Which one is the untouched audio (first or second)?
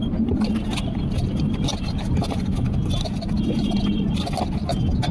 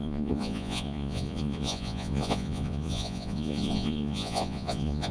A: first